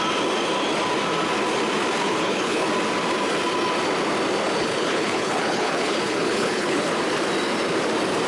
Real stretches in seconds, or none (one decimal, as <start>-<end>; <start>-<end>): 0.0-2.0; 2.7-4.6; 7.0-8.3